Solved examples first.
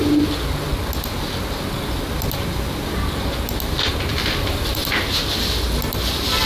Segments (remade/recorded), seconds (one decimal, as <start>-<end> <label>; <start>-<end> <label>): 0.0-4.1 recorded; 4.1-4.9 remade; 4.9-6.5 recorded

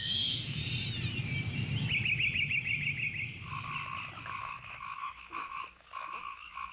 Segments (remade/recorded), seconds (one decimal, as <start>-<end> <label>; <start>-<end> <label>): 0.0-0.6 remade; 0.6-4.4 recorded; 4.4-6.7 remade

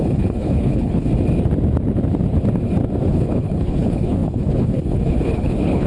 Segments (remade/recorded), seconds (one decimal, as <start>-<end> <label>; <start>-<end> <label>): 0.0-1.1 remade; 1.1-3.1 recorded; 3.1-5.9 remade